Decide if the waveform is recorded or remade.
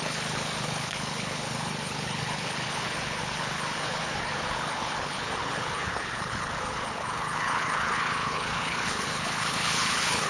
remade